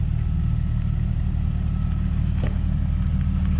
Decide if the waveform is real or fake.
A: real